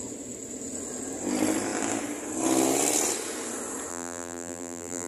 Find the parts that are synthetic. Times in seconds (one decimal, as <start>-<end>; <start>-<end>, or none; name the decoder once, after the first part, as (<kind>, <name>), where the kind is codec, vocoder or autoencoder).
3.9-5.1 (vocoder, BigVGAN v2)